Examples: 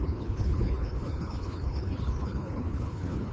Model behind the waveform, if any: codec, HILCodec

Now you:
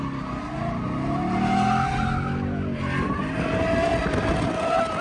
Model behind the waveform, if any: none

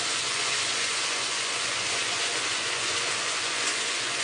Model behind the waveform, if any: vocoder, Vocos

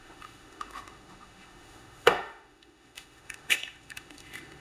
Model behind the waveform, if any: autoencoder, DAC-VAE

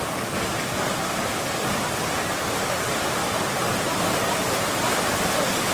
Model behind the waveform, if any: none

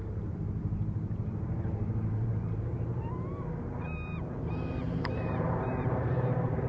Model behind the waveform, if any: vocoder, BigVGAN v2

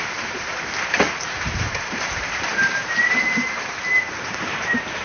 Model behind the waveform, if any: vocoder, BigVGAN v2